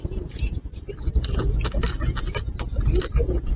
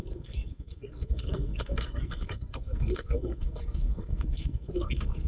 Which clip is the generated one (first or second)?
second